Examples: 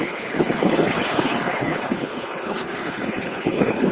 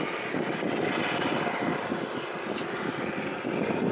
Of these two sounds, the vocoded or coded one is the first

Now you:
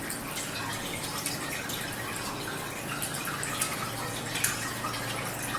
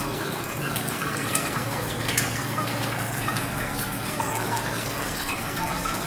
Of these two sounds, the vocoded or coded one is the second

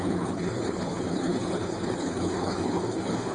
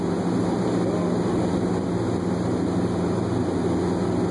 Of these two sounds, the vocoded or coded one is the first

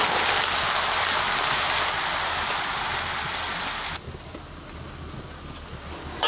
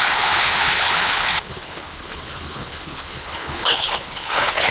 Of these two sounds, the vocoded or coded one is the second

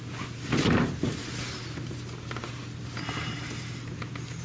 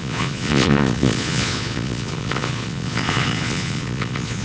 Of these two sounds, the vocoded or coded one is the second